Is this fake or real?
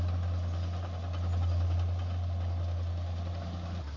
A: real